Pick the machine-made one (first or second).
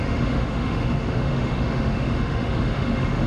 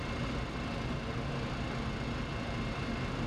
first